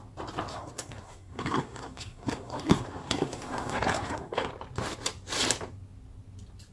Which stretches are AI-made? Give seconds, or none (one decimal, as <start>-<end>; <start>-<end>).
0.5-4.5